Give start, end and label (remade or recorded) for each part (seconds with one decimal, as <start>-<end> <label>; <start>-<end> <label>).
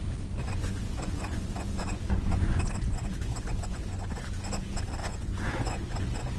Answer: 0.0-0.4 recorded; 0.4-4.2 remade; 4.2-5.0 recorded; 5.0-6.4 remade